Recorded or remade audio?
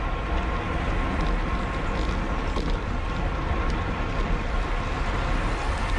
recorded